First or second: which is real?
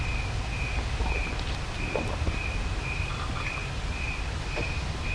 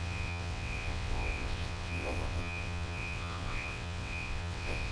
first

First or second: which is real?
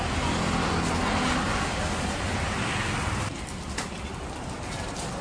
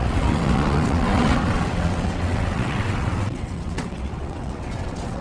first